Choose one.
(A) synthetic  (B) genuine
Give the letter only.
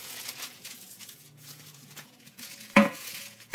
A